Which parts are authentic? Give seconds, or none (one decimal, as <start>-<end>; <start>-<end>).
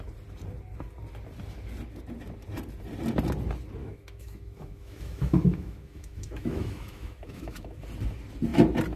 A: 0.0-3.8; 7.8-9.0